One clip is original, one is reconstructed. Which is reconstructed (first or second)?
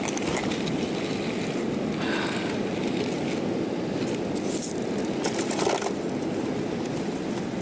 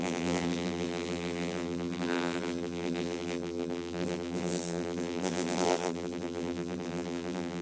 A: second